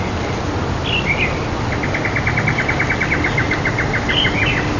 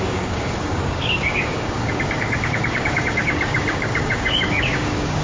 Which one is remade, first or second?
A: second